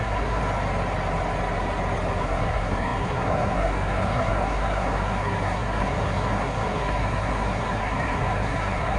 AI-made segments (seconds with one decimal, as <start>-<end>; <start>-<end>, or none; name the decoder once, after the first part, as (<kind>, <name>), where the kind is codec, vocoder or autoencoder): 0.0-0.4 (codec, SNAC); 2.2-9.0